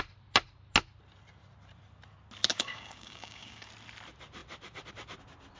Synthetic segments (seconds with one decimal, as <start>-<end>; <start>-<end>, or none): 2.5-3.7